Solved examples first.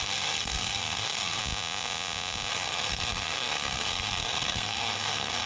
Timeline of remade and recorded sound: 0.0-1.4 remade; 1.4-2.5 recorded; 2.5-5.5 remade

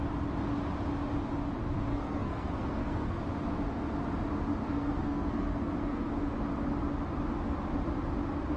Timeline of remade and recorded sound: 0.0-1.9 recorded; 1.9-3.2 remade; 3.2-4.6 recorded; 4.6-6.1 remade; 6.1-8.6 recorded

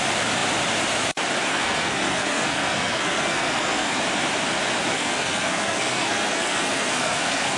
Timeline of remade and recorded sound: 0.0-1.5 recorded; 1.5-4.0 remade; 4.0-4.9 recorded; 4.9-7.6 remade

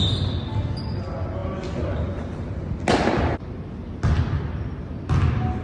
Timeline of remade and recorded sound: 0.0-5.6 recorded

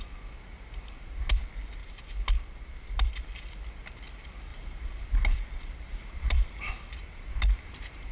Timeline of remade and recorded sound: 0.0-1.8 recorded; 1.8-3.7 remade; 3.7-4.5 recorded; 4.5-6.7 remade; 6.7-8.1 recorded

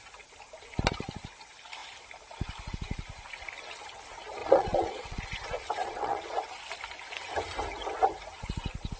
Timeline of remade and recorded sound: 0.0-4.4 recorded; 4.4-5.2 remade; 5.2-5.8 recorded; 5.8-6.4 remade; 6.4-9.0 recorded